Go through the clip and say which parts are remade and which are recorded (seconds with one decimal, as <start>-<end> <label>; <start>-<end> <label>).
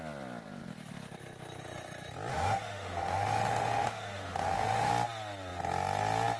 0.0-2.3 recorded; 2.3-4.9 remade; 4.9-6.4 recorded